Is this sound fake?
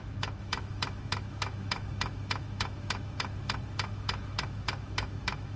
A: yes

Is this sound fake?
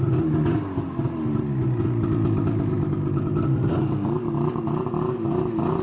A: no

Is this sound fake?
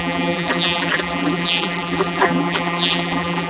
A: yes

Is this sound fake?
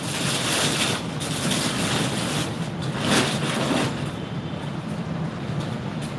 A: no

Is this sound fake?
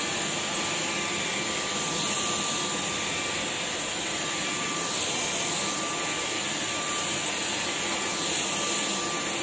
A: no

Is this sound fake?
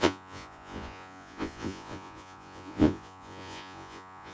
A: yes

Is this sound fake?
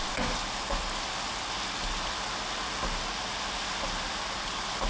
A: no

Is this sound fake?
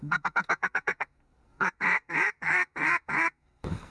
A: yes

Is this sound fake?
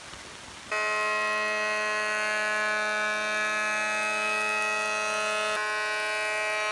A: no